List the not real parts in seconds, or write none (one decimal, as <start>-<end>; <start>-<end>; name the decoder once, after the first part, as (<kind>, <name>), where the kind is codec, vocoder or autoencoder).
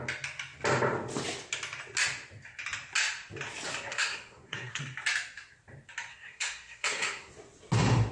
3.9-4.8 (codec, SNAC); 6.1-7.3